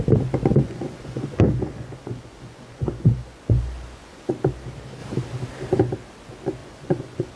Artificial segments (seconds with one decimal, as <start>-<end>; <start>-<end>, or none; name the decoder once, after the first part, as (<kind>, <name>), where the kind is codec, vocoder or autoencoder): 0.5-4.3 (vocoder, Vocos); 6.6-7.4